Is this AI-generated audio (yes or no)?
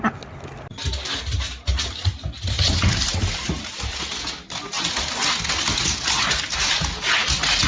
no